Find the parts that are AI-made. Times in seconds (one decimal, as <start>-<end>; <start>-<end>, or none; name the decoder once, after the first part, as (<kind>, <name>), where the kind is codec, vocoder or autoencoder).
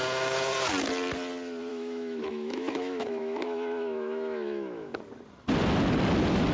1.7-5.0 (autoencoder, DAC-VAE)